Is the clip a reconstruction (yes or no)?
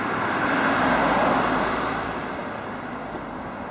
yes